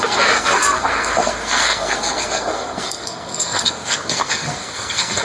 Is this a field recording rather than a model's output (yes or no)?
no